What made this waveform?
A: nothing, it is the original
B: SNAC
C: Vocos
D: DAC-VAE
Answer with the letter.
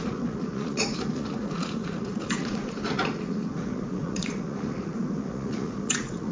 C